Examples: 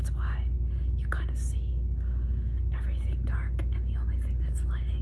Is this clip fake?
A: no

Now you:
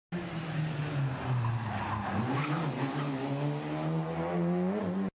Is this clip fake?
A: no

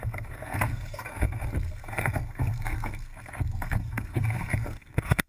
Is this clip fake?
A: yes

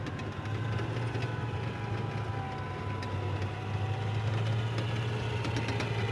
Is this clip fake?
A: no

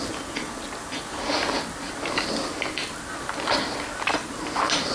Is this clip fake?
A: no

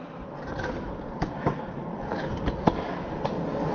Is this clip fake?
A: no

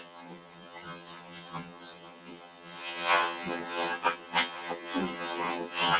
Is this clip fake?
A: yes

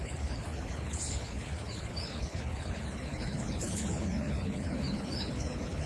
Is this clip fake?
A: yes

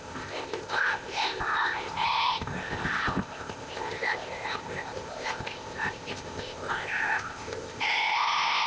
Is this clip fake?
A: yes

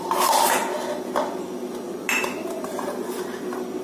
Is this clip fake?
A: no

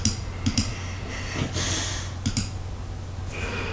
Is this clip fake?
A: no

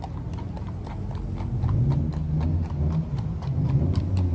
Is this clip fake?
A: no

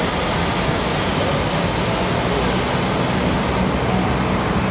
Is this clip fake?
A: no